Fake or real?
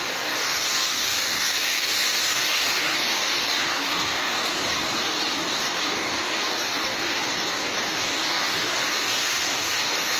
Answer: fake